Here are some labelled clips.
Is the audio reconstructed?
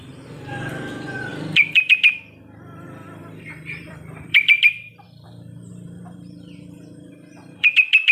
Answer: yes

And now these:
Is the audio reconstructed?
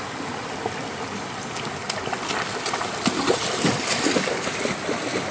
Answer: no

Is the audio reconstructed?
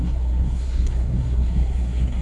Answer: yes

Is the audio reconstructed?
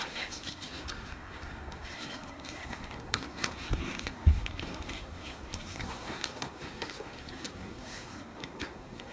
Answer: yes